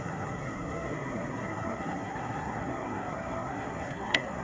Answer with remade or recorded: remade